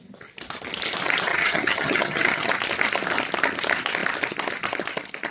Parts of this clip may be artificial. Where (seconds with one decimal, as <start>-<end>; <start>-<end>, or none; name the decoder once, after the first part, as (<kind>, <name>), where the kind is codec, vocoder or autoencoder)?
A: 1.3-2.5 (vocoder, HiFi-GAN)